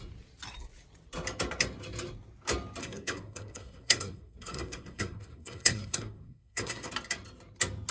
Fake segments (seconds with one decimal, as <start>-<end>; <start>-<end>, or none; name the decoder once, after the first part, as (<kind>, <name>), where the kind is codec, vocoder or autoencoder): 2.8-6.9 (codec, SNAC)